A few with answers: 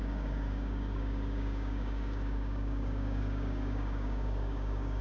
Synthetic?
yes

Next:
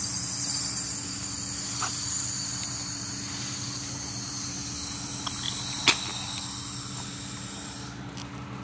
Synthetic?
no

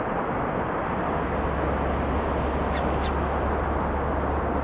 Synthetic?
no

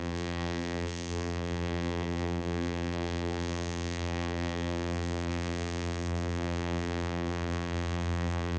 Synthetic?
yes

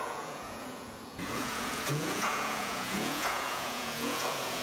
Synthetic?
yes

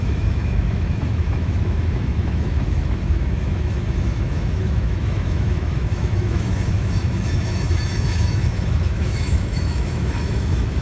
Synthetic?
yes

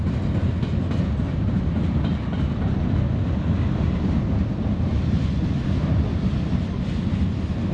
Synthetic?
no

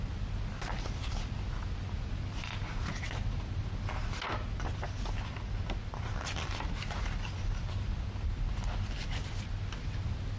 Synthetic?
no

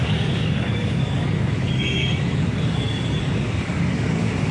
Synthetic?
yes